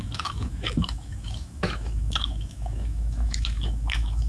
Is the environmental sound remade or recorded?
remade